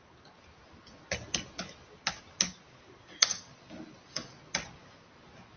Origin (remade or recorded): recorded